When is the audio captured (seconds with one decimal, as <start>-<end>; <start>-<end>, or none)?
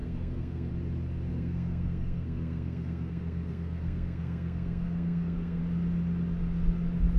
0.7-1.3; 5.6-7.2